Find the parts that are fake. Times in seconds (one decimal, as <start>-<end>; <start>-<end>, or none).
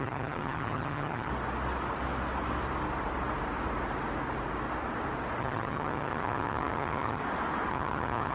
0.0-1.3; 5.4-7.2; 7.7-8.3